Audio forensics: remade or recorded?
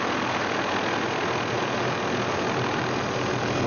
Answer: recorded